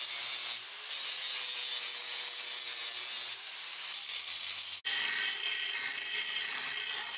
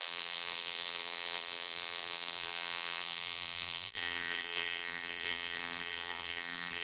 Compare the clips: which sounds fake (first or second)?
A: second